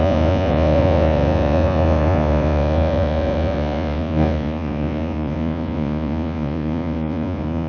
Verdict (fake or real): fake